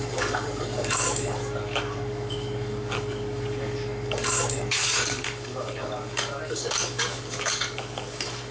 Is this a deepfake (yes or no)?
yes